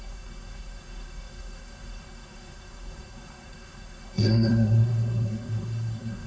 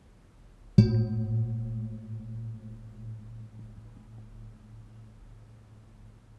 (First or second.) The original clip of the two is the second